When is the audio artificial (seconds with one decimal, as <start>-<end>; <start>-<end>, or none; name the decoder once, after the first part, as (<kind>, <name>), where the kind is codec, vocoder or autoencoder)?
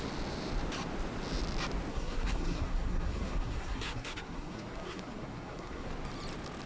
1.9-5.9 (codec, SNAC)